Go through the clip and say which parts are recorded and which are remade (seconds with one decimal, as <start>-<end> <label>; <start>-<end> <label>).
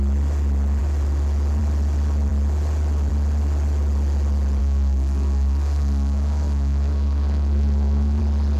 0.0-4.6 recorded; 4.6-8.2 remade; 8.2-8.6 recorded